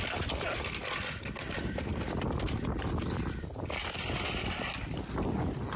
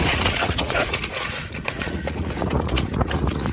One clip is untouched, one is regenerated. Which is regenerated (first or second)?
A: second